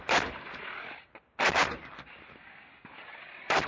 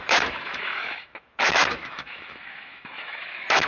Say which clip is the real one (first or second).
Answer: first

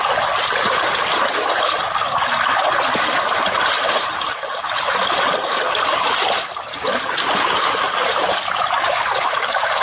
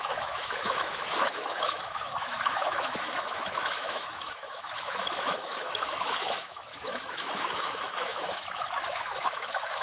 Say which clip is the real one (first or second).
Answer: first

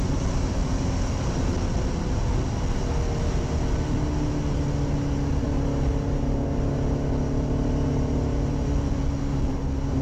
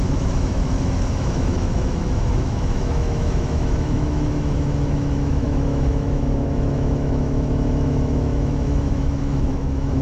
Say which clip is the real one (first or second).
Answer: first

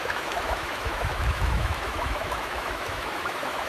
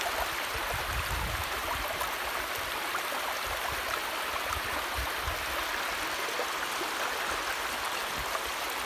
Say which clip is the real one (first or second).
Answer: second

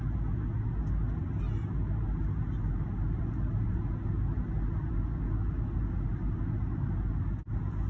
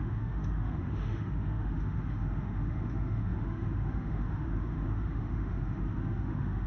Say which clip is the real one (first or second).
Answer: first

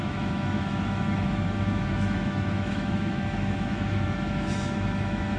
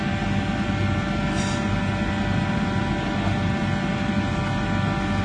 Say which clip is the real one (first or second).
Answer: second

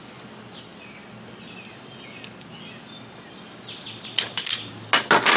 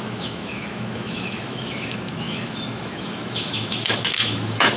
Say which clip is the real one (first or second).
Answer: first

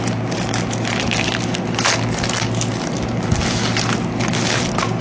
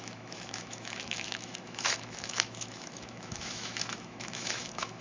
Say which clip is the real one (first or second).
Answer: first